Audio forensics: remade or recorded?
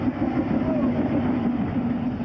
recorded